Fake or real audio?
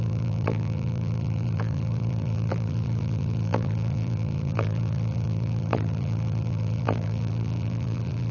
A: fake